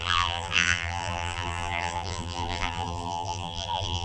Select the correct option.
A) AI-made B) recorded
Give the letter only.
A